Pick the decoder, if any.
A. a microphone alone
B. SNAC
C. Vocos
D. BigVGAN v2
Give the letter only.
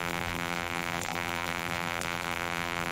D